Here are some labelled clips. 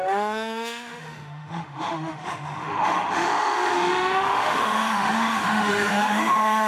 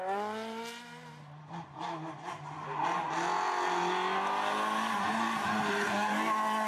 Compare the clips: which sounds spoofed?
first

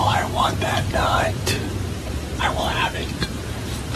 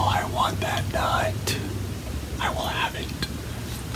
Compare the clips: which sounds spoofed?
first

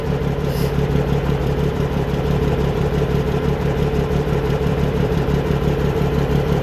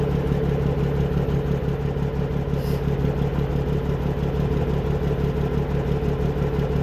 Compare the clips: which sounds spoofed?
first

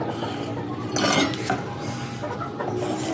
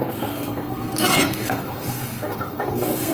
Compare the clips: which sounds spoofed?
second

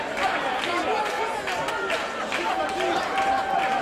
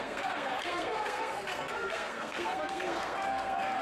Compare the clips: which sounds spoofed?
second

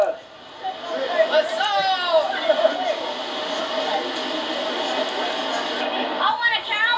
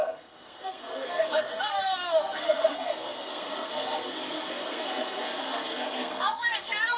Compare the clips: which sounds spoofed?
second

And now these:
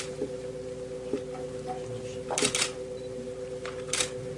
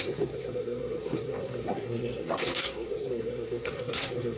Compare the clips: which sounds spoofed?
second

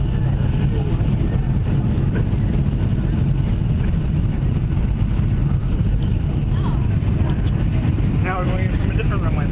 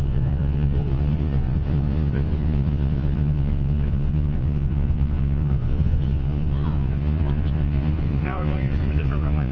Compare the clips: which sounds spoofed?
second